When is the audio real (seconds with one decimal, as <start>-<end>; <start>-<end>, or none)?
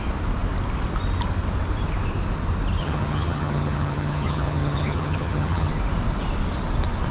0.0-2.8; 5.7-7.1